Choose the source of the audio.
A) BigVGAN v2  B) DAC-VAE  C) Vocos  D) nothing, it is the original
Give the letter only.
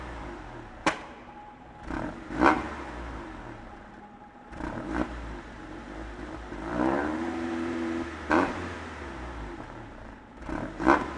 A